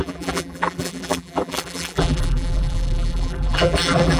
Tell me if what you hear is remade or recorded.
remade